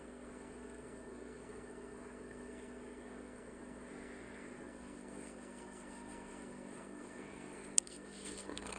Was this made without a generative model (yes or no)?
no